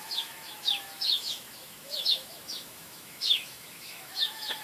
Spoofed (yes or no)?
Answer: yes